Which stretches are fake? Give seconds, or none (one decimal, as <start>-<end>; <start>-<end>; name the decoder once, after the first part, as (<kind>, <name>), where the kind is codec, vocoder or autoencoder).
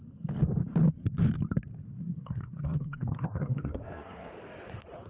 2.0-4.3 (codec, SNAC)